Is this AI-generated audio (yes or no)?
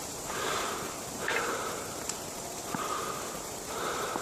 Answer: yes